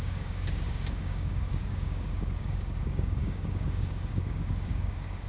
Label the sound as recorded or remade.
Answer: remade